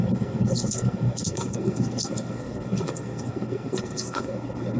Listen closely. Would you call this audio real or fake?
fake